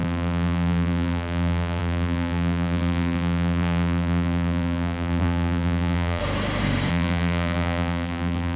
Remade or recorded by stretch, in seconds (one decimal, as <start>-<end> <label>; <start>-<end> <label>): 0.0-6.2 remade; 6.2-6.9 recorded; 6.9-8.6 remade